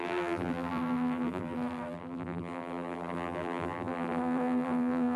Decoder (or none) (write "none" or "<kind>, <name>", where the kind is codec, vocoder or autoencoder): vocoder, BigVGAN v2